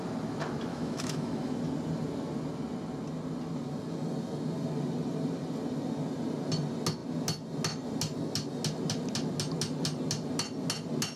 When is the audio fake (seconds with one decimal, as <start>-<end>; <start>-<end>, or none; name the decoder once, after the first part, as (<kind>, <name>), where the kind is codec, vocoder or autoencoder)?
0.7-1.6 (autoencoder, DAC-VAE)

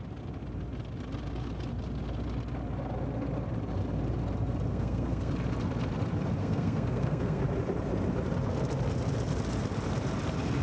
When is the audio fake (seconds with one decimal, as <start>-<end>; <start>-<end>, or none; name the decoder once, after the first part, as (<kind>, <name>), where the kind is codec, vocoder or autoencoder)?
4.7-5.3 (codec, SNAC); 6.4-7.4

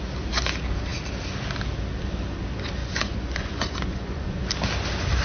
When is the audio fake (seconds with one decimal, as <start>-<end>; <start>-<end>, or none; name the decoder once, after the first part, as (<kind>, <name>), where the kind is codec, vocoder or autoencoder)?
2.8-4.4 (vocoder, Vocos)

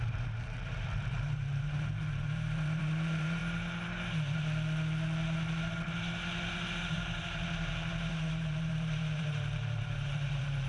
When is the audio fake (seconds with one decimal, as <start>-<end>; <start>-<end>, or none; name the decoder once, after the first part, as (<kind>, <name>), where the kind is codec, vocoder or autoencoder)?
0.0-3.4 (vocoder, BigVGAN v2); 6.8-10.7

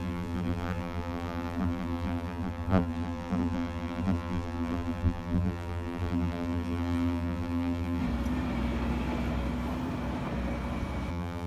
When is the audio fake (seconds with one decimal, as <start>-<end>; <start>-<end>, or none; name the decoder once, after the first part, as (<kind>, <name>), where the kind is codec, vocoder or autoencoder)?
0.0-8.0 (vocoder, BigVGAN v2); 11.1-11.5

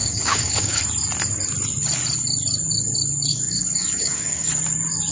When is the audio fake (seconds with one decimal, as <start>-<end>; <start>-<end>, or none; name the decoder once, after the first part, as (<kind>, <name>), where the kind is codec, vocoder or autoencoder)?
0.0-0.8 (codec, DAC); 3.3-4.5

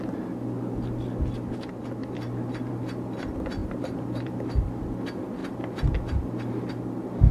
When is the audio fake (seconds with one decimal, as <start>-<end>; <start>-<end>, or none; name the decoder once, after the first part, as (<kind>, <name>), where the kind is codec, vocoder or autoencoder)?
3.6-4.8 (vocoder, BigVGAN v2)